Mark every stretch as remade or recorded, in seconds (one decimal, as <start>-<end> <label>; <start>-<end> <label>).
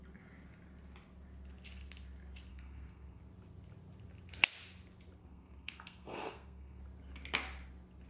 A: 0.0-2.5 recorded; 2.5-3.2 remade; 3.2-5.2 recorded; 5.2-6.8 remade; 6.8-8.1 recorded